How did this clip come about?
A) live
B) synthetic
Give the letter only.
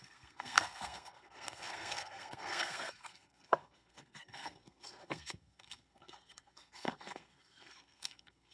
B